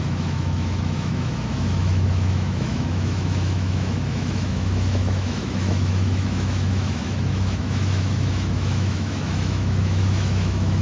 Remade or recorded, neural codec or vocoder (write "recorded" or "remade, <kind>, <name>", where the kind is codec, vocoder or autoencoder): remade, autoencoder, DAC-VAE